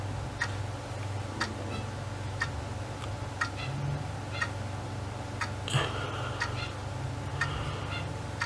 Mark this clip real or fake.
real